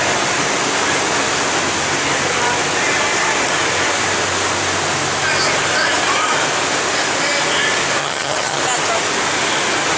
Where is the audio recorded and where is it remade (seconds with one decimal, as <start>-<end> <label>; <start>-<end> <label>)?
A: 0.0-8.0 recorded; 8.0-8.6 remade; 8.6-10.0 recorded